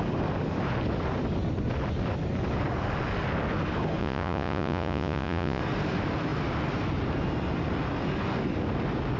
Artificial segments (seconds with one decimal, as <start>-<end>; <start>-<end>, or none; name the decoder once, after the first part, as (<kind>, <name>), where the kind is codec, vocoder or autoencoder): 4.0-5.6 (vocoder, Vocos)